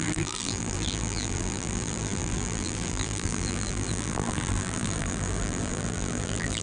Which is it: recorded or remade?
remade